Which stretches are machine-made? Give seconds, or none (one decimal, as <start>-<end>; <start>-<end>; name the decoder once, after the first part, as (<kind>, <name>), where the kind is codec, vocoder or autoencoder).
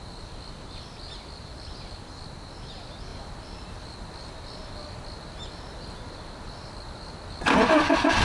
none